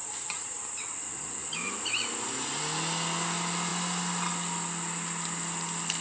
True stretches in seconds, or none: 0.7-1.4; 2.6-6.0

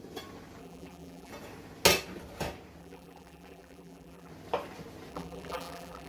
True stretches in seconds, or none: 0.0-0.6; 1.3-2.8; 4.3-5.1

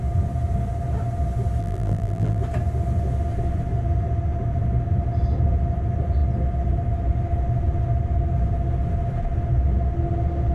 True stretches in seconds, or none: 0.0-1.6; 2.4-10.5

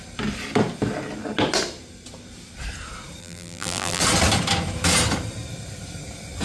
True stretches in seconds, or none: 0.0-3.2; 4.0-6.4

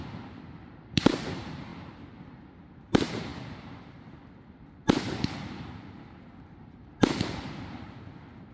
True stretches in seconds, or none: 1.7-2.8

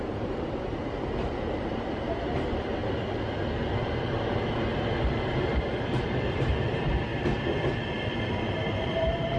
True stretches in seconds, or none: 0.7-1.6; 2.8-3.7; 4.7-5.3; 7.1-8.1

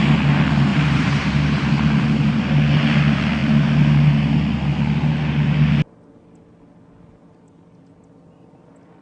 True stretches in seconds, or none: 0.0-0.7; 1.7-9.0